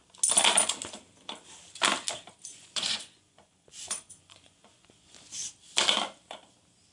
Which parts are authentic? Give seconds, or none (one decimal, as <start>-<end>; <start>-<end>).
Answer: 0.0-2.5; 5.3-6.9